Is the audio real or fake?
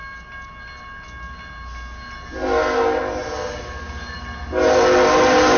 real